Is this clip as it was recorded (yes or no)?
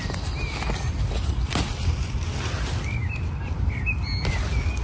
yes